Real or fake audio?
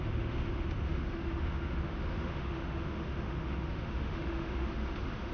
fake